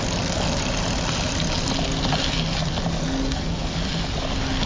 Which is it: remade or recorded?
recorded